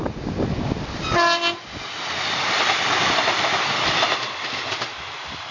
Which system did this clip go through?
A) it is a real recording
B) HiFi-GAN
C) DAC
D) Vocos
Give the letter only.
A